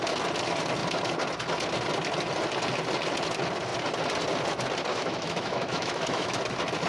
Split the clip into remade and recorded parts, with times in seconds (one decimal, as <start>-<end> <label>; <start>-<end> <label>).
0.0-4.9 recorded; 4.9-6.4 remade; 6.4-6.9 recorded